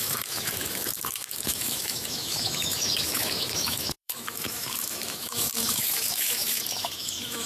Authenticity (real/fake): fake